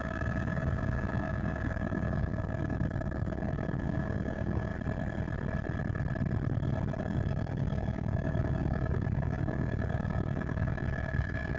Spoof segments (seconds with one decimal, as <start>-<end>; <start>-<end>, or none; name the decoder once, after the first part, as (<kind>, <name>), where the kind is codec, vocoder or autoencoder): 0.0-4.7 (codec, DAC); 7.0-11.6